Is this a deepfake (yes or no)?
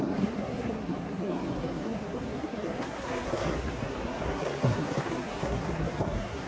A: yes